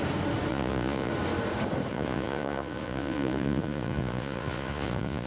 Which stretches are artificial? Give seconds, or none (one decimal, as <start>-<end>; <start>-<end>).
0.5-1.1; 1.9-5.3